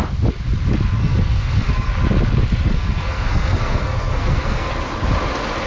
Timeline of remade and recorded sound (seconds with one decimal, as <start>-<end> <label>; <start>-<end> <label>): 0.0-1.0 recorded; 1.0-1.9 remade; 1.9-2.7 recorded; 2.7-4.7 remade; 4.7-5.7 recorded